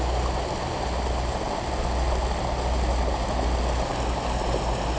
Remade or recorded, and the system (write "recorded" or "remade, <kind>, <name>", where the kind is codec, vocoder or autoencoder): recorded